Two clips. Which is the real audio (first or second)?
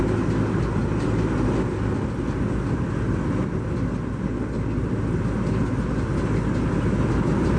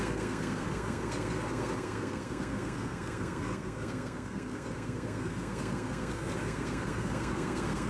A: first